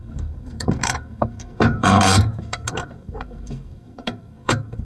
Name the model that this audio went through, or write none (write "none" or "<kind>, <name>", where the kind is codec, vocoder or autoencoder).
codec, SNAC